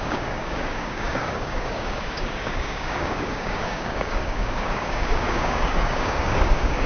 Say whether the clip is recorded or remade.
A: remade